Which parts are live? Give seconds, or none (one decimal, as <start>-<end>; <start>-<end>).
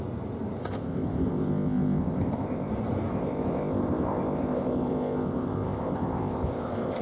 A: 0.0-0.6; 2.7-3.1